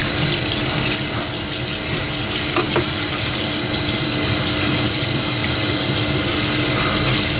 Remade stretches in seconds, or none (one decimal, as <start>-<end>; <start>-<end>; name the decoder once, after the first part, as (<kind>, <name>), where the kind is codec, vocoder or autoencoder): none